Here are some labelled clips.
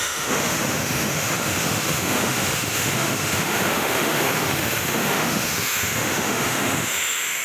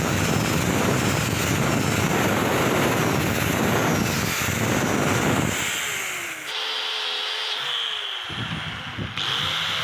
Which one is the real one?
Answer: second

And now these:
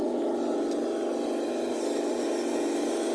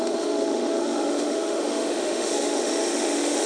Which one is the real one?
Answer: first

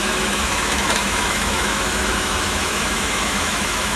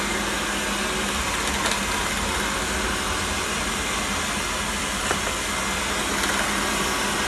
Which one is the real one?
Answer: second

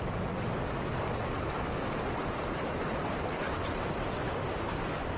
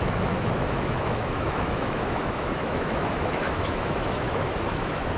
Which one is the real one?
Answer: first